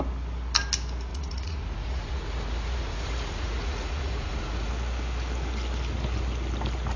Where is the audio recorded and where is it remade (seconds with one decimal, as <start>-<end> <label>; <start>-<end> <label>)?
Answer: 0.0-1.1 recorded; 1.1-4.7 remade; 4.7-7.0 recorded